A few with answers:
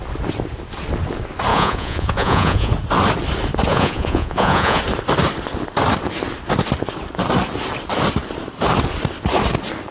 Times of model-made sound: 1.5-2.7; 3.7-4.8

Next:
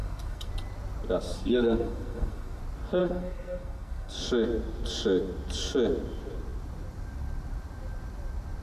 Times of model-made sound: 0.0-0.5; 1.3-2.6; 3.0-4.2

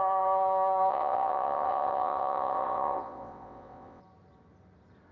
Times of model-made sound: 0.9-4.0